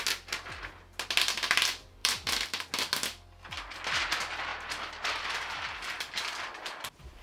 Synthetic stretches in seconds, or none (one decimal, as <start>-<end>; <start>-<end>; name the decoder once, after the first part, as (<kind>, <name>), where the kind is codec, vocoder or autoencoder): 2.0-2.7 (vocoder, BigVGAN v2); 4.5-5.9